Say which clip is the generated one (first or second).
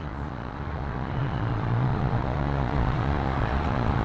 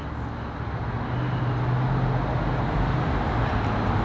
first